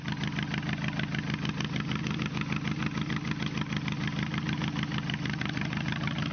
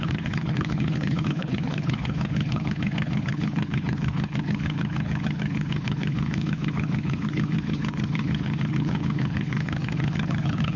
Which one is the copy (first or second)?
second